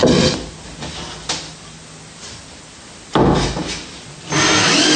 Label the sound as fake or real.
real